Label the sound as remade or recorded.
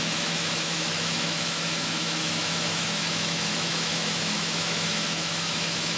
remade